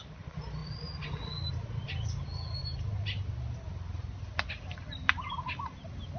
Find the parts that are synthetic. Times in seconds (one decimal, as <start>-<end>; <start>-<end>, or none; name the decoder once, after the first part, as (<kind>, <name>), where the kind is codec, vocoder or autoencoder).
none